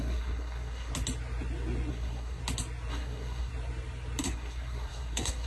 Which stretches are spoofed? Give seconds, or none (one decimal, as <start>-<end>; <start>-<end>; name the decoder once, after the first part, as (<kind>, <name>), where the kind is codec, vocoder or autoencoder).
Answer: 0.0-0.9 (codec, SNAC); 1.9-2.4; 2.9-3.5; 4.2-5.5